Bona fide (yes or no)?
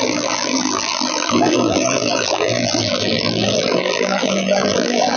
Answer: no